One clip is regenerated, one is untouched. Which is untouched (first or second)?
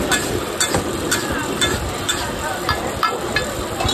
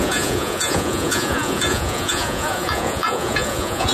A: first